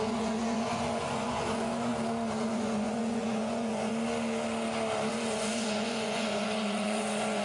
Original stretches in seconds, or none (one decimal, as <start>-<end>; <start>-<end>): 1.9-2.4; 3.9-5.1